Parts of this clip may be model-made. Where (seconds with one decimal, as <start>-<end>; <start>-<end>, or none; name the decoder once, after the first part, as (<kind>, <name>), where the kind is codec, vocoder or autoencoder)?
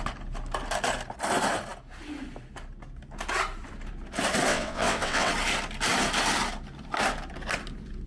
4.5-5.3 (vocoder, WaveNeXt)